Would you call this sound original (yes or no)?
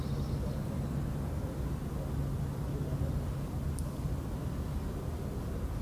yes